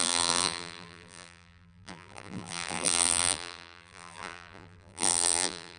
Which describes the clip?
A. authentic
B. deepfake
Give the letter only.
B